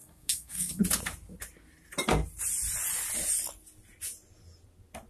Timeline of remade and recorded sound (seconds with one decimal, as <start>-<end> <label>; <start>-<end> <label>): 0.0-0.8 remade; 0.8-5.1 recorded